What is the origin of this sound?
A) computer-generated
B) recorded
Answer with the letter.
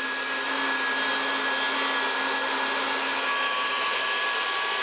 B